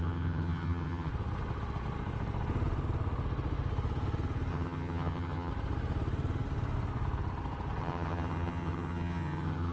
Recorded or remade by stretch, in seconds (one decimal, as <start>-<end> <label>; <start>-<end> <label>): 0.0-1.1 remade; 1.1-4.5 recorded; 4.5-5.5 remade; 5.5-7.8 recorded; 7.8-9.7 remade